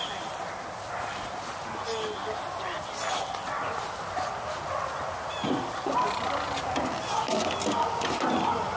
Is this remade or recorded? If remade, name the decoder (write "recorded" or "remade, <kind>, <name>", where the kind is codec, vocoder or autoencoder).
recorded